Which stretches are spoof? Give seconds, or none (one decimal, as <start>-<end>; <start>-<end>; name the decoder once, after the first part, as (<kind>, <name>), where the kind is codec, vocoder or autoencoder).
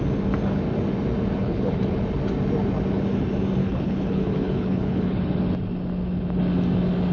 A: 1.4-2.0 (codec, HILCodec); 3.6-5.2